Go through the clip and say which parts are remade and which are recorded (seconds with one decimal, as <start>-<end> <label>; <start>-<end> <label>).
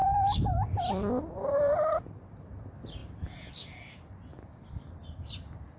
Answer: 0.0-3.0 remade; 3.0-3.5 recorded; 3.5-5.8 remade